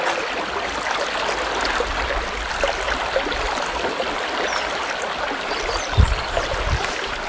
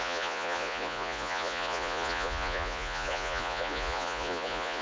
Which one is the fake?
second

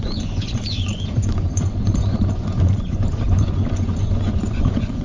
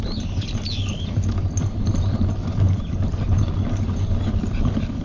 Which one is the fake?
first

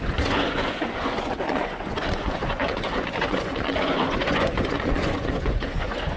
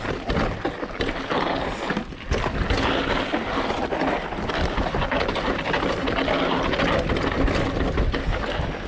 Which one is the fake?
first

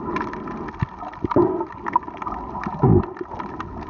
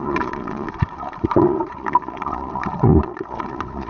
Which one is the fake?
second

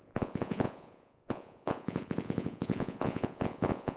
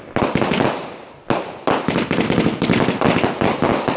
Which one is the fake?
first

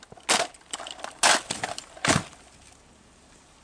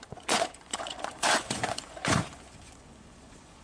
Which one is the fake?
second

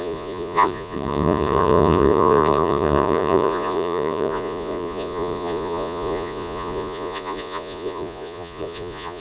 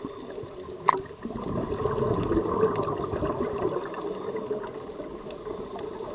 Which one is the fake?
first